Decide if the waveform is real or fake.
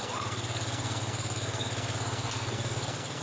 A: fake